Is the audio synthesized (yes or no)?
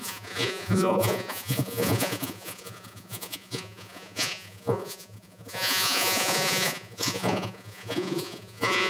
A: yes